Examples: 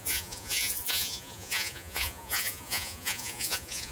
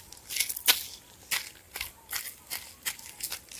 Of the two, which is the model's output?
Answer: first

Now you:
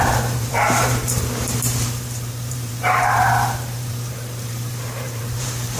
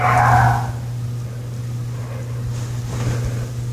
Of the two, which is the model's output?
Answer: first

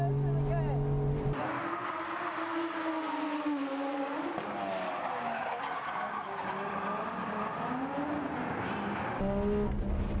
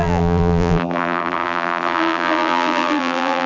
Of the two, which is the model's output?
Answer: second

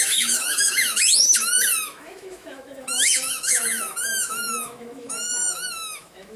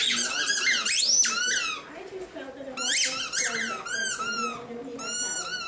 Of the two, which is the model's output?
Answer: first